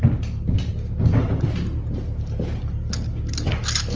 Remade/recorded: recorded